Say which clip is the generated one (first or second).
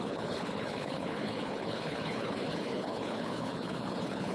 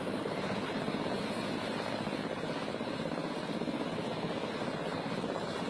first